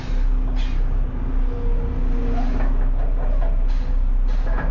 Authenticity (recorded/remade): recorded